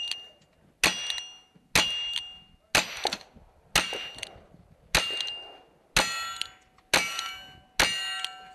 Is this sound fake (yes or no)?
no